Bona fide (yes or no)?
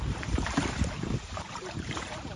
no